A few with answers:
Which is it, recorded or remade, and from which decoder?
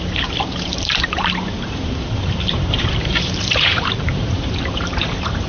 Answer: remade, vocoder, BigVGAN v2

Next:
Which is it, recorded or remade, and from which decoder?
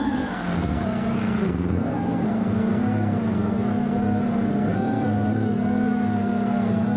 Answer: remade, codec, SNAC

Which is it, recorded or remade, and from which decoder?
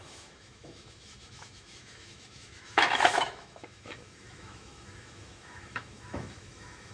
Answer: remade, autoencoder, DAC-VAE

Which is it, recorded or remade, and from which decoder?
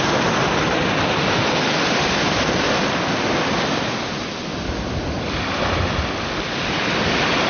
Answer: recorded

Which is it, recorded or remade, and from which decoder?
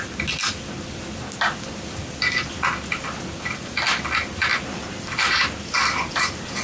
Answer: recorded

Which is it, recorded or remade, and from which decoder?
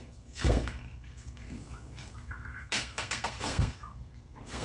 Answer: remade, codec, SNAC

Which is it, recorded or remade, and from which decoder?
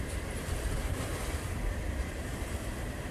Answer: remade, vocoder, BigVGAN v2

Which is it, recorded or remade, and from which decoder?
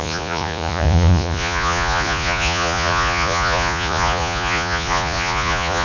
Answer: remade, vocoder, Vocos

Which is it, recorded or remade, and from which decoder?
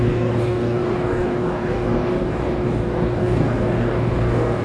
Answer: remade, codec, DAC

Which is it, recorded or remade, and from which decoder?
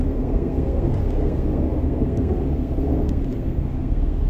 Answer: remade, codec, SNAC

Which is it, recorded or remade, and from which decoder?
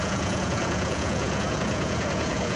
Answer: remade, vocoder, Vocos